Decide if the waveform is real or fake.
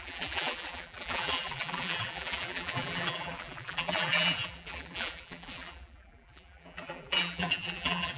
fake